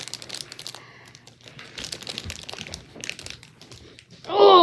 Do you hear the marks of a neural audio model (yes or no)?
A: no